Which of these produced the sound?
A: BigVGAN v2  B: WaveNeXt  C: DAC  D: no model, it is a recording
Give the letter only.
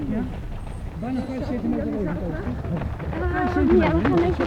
D